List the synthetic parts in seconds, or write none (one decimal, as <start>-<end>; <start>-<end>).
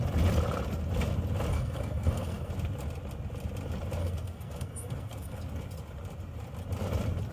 1.5-2.5; 4.0-5.4